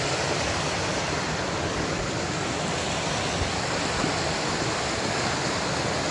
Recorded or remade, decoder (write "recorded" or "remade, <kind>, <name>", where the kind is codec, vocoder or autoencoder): recorded